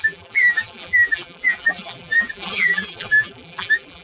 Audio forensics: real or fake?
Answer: fake